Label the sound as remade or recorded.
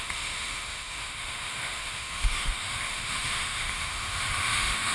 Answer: remade